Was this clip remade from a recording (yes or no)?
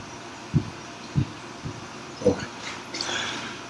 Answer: yes